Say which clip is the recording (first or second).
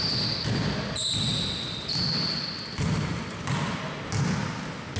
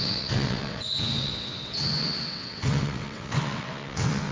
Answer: first